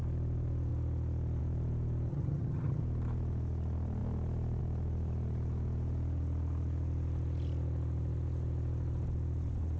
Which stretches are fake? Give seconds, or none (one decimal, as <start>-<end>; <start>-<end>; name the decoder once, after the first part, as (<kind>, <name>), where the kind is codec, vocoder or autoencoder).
2.1-2.8 (vocoder, HiFi-GAN)